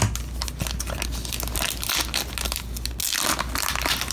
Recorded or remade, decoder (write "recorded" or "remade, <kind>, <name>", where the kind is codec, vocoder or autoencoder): recorded